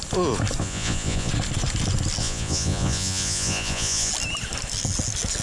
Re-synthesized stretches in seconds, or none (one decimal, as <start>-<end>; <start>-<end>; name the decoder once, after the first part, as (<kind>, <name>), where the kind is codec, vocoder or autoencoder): 0.6-1.3 (vocoder, Vocos); 2.2-4.1